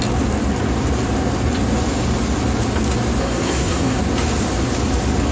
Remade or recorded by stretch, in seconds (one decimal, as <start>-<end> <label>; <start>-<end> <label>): 0.0-3.2 recorded; 3.2-4.0 remade; 4.0-5.3 recorded